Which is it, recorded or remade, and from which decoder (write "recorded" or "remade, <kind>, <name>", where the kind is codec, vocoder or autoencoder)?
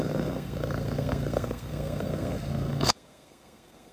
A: remade, codec, SNAC